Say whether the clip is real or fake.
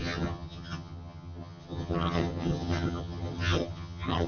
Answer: fake